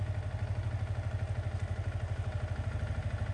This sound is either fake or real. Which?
real